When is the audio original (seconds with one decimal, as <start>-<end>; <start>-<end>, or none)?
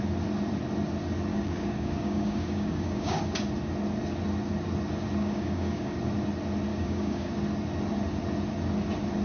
0.0-1.3; 3.2-5.2; 5.9-6.7; 7.3-9.2